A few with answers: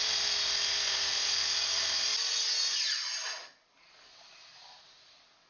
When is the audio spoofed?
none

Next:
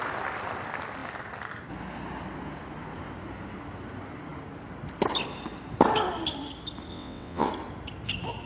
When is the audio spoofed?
6.9-7.5 (vocoder, WaveNeXt)

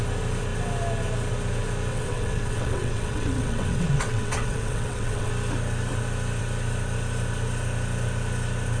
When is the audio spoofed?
1.9-5.3 (vocoder, WaveNeXt)

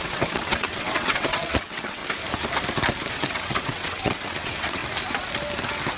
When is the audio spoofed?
0.0-2.0 (vocoder, WaveNeXt); 3.1-4.8

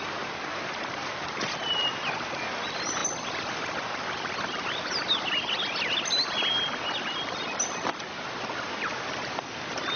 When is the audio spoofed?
none